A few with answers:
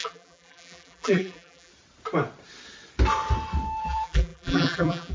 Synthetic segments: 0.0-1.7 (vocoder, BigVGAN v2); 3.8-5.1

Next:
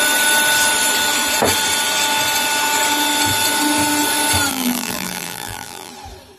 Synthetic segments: 4.5-5.9 (vocoder, BigVGAN v2)

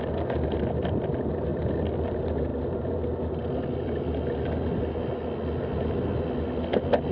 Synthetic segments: none

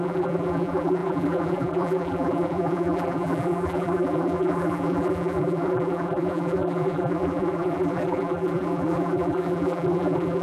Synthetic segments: 0.0-10.4 (vocoder, BigVGAN v2)

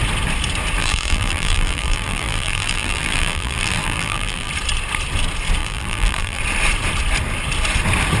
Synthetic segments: 0.8-4.5 (vocoder, BigVGAN v2); 5.6-6.4